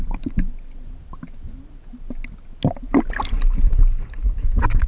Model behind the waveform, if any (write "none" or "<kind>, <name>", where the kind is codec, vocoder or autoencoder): none